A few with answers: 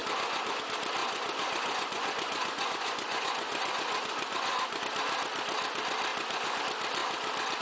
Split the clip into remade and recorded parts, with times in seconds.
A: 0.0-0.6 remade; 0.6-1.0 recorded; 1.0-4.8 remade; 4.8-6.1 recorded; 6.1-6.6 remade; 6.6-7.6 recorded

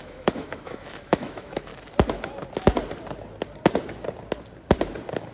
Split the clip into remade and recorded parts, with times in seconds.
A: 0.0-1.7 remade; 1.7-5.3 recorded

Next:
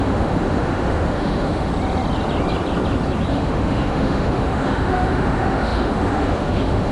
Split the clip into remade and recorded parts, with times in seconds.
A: 0.0-1.7 remade; 1.7-3.3 recorded; 3.3-6.9 remade

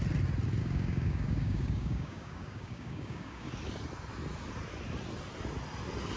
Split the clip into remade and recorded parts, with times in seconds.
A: 0.0-0.6 recorded; 0.6-3.5 remade; 3.5-6.2 recorded